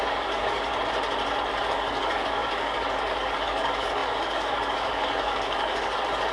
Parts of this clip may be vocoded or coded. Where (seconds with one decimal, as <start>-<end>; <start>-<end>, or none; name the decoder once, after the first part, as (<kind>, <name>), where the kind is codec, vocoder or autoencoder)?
0.0-0.7 (codec, DAC); 1.6-6.3